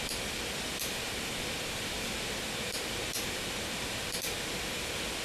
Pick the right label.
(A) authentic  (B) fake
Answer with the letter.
B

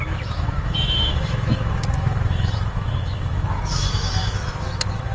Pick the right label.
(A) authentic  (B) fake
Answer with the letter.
B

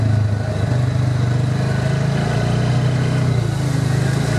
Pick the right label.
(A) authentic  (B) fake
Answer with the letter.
A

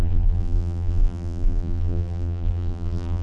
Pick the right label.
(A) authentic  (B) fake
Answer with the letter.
B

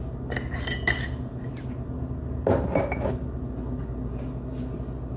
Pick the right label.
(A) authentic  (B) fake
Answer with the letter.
A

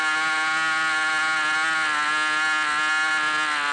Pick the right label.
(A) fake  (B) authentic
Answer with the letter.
B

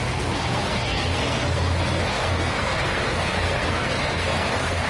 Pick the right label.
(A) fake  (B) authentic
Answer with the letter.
A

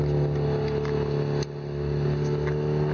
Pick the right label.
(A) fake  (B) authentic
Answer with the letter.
B